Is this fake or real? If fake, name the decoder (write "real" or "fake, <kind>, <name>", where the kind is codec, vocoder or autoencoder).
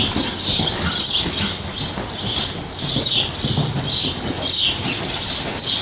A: real